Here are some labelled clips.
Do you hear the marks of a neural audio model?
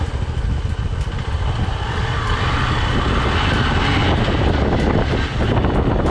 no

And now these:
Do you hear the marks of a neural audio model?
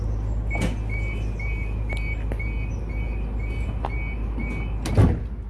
no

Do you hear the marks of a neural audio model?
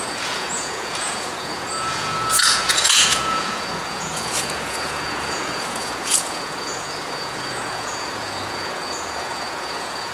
yes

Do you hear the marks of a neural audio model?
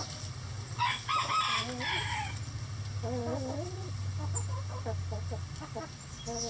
no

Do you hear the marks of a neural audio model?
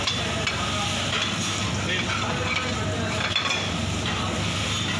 no